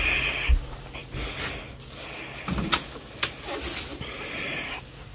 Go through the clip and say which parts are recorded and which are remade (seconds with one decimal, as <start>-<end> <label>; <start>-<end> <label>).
0.0-3.9 recorded; 3.9-4.4 remade; 4.4-5.1 recorded